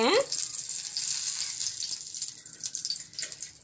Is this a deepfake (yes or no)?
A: no